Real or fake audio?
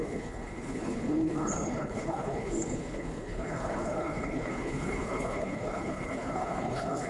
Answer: fake